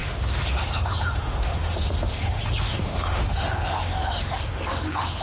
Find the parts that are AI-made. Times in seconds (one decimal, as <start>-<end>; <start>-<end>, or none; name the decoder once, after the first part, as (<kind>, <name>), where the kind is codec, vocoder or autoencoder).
0.0-5.2 (autoencoder, DAC-VAE)